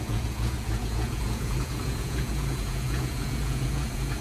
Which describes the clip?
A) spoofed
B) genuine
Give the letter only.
A